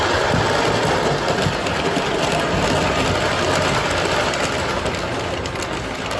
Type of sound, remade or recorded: recorded